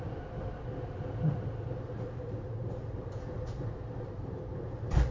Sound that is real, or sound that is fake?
fake